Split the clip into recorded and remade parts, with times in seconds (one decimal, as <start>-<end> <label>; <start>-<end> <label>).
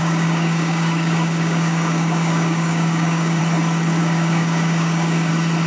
0.0-3.4 remade; 3.4-4.0 recorded; 4.0-5.3 remade; 5.3-5.7 recorded